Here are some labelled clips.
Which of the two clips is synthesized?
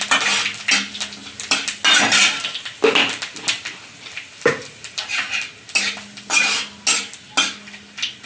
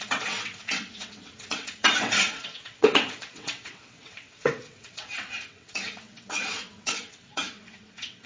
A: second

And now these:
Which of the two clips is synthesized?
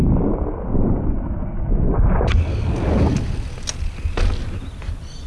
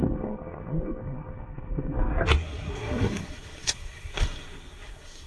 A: second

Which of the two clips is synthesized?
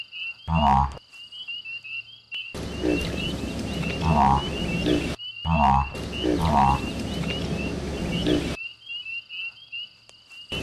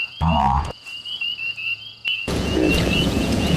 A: second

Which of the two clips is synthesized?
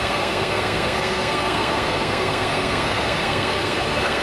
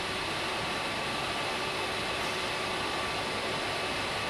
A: first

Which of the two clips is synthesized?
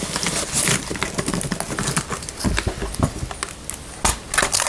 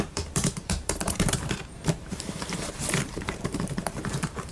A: second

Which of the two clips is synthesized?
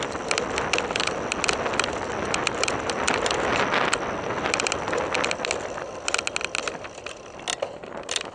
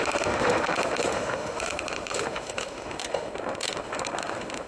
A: second